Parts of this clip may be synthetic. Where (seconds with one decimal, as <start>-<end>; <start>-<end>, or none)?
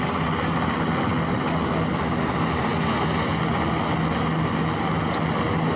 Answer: none